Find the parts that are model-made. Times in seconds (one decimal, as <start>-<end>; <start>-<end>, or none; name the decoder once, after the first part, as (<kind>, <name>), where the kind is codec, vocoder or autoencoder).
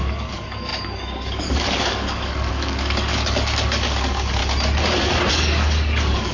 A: 0.0-4.4 (codec, DAC); 5.3-6.3